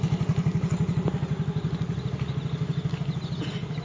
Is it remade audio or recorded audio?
recorded